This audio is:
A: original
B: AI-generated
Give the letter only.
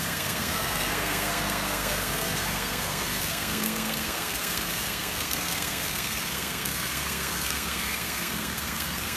B